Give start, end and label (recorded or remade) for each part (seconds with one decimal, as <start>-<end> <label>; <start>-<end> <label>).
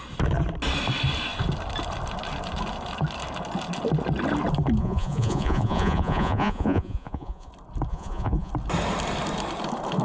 0.0-4.8 recorded; 4.8-7.5 remade; 7.5-7.9 recorded; 7.9-8.5 remade; 8.5-10.0 recorded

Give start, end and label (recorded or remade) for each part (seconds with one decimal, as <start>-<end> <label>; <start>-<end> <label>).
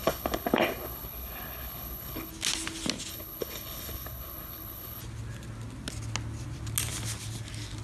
0.0-2.3 remade; 2.3-3.1 recorded; 3.1-5.0 remade; 5.0-7.8 recorded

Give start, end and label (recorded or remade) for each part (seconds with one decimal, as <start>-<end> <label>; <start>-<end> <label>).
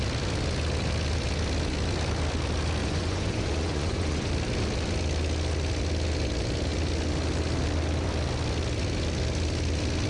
0.0-2.8 recorded; 2.8-4.3 remade; 4.3-10.1 recorded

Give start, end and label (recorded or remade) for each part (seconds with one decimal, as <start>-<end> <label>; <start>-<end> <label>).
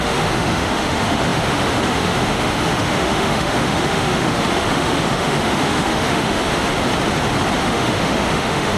0.0-6.7 remade; 6.7-7.6 recorded; 7.6-8.8 remade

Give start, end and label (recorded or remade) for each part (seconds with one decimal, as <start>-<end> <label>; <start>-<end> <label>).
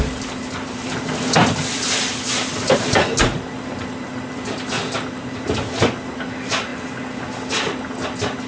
0.0-8.5 recorded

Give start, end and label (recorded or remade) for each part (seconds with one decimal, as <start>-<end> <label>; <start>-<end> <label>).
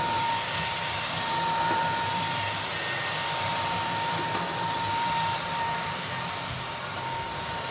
0.0-2.7 remade; 2.7-3.5 recorded; 3.5-7.7 remade